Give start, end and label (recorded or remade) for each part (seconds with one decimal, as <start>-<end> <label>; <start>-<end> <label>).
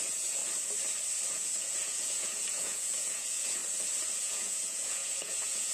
0.0-0.4 remade; 0.4-1.3 recorded; 1.3-3.6 remade; 3.6-4.2 recorded; 4.2-5.7 remade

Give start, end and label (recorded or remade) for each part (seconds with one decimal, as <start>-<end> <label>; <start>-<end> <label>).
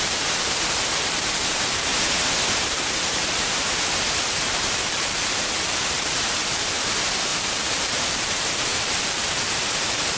0.0-1.9 remade; 1.9-2.6 recorded; 2.6-10.2 remade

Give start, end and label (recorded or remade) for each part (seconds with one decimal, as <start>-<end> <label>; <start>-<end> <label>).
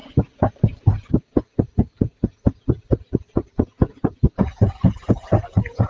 0.0-5.9 recorded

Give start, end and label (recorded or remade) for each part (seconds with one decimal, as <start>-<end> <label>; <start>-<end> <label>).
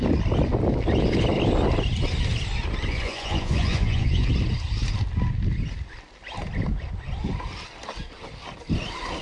0.0-2.9 recorded; 2.9-4.3 remade; 4.3-9.2 recorded